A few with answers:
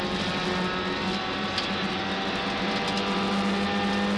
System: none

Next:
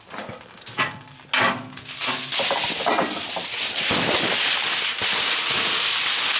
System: none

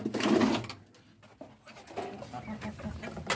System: none